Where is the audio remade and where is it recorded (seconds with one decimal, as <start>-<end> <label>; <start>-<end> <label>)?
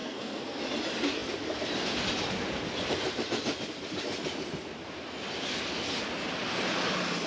0.0-0.6 remade; 0.6-7.3 recorded